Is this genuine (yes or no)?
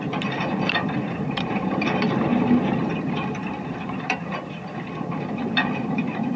no